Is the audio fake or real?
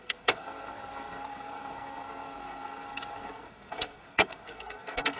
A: fake